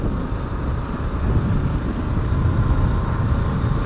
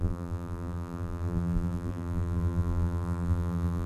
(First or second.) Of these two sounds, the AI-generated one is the second